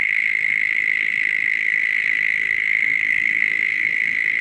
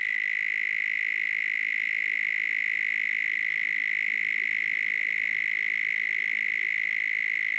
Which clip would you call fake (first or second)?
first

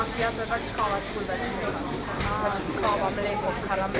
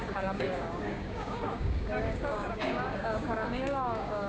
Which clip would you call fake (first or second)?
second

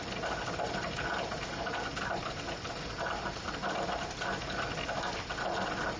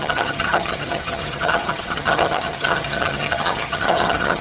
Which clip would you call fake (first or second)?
second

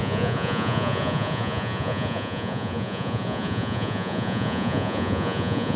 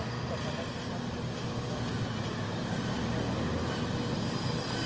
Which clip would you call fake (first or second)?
first